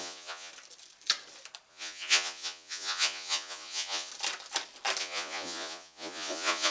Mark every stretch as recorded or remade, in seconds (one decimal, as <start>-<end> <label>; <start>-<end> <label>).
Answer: 0.0-0.5 remade; 0.5-1.7 recorded; 1.7-4.1 remade; 4.1-5.0 recorded; 5.0-6.7 remade